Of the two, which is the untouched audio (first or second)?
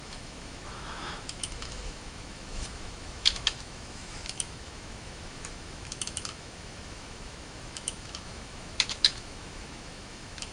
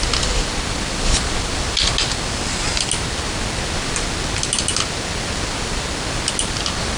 second